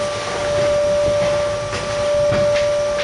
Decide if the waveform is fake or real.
real